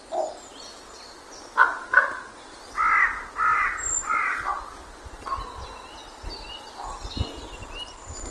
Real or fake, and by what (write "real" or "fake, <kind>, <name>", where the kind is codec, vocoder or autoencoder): real